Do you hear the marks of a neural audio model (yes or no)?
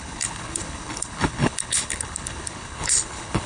yes